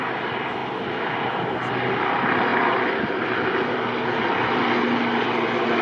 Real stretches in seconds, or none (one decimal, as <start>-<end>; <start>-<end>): 0.0-5.8